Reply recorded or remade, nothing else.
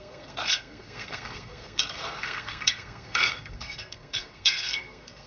remade